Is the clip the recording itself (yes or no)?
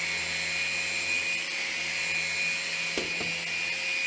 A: yes